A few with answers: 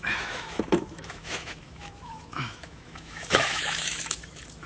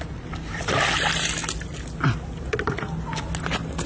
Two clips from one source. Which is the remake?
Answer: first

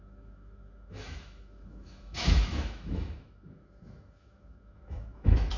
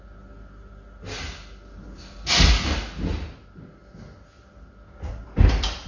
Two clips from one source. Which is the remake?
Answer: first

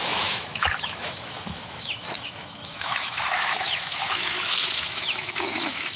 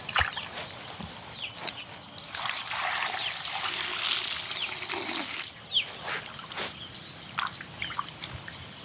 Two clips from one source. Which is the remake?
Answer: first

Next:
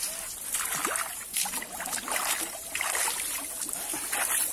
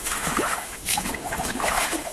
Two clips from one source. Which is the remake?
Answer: second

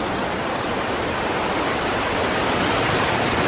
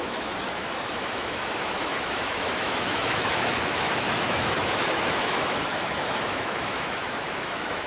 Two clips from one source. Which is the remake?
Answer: second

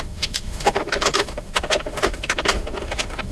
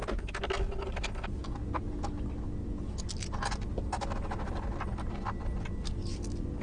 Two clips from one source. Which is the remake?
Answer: first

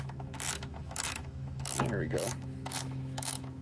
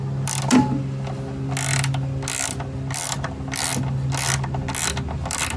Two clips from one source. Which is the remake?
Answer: first